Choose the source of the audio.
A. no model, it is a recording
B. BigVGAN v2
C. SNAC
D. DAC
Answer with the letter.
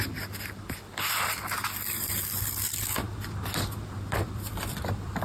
B